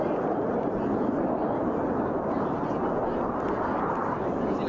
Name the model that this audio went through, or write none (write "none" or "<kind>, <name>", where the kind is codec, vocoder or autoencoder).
none